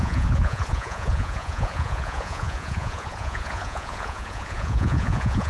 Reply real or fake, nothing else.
fake